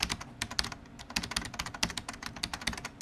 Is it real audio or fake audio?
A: real